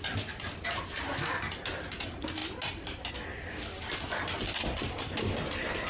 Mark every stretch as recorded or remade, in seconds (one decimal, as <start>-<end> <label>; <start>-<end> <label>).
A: 0.0-5.9 recorded